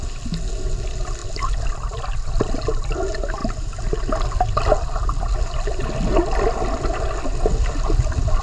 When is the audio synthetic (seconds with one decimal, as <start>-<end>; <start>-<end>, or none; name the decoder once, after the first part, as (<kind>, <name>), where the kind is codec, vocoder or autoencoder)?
none